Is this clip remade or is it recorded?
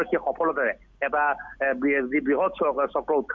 recorded